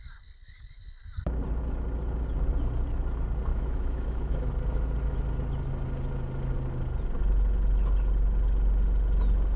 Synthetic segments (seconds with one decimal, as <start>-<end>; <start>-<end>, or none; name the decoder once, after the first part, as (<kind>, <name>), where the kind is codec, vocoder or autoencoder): 3.5-4.5 (autoencoder, DAC-VAE)